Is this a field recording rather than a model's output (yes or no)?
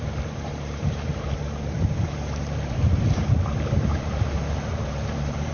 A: no